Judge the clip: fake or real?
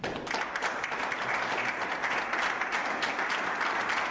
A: real